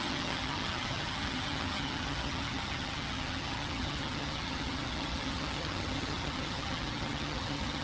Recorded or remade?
remade